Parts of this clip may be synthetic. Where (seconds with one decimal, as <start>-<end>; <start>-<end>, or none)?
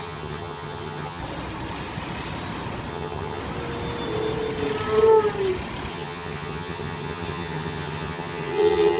0.0-1.2; 2.9-3.4; 5.9-9.0